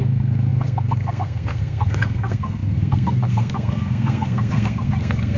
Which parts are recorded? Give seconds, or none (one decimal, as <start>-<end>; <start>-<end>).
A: none